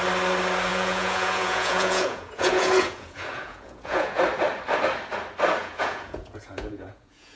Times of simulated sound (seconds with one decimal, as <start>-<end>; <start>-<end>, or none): 0.7-4.2; 5.6-7.4